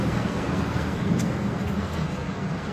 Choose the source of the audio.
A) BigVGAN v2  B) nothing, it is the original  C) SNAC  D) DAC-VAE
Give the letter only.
C